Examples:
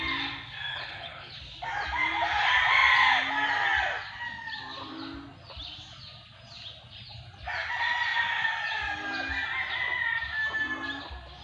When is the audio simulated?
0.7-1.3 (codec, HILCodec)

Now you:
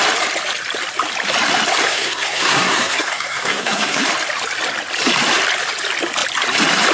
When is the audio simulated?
1.8-4.0 (codec, SNAC)

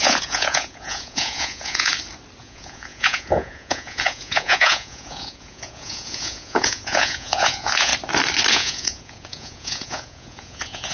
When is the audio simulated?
0.0-1.9 (vocoder, Vocos); 2.4-7.9; 8.5-10.9

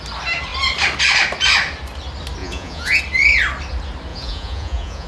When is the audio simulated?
2.4-3.0 (vocoder, Vocos); 4.1-5.1

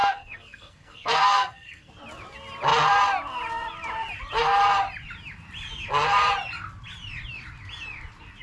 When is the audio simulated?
0.0-1.9 (codec, SNAC)